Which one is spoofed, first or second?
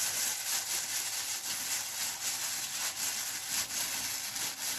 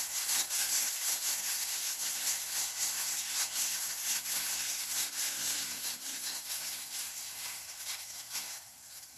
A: second